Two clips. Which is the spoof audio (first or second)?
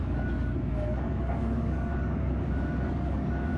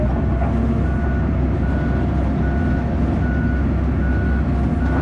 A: first